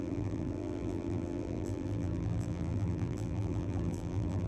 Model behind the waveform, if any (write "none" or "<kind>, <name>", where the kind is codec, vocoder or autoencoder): vocoder, BigVGAN v2